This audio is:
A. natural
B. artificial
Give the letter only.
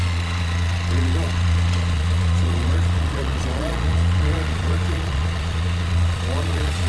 B